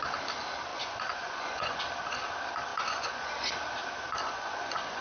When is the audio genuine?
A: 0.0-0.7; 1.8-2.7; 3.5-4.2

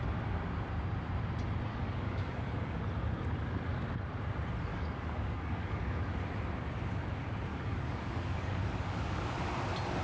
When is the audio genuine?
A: 0.0-1.7; 2.8-4.7; 6.2-7.5; 9.2-10.0

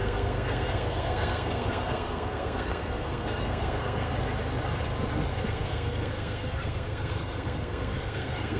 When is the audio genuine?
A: 4.1-5.3

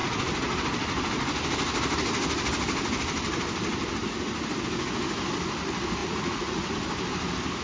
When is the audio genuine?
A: 0.0-6.0; 6.7-7.6

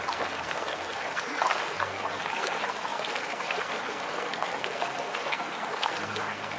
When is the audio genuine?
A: none